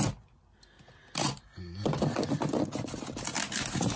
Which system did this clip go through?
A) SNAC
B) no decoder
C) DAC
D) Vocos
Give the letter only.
B